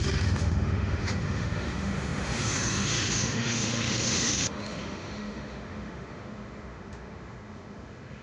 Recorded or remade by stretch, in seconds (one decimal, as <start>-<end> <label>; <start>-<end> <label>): 0.0-8.2 remade